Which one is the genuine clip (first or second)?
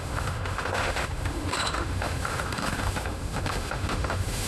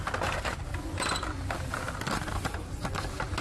second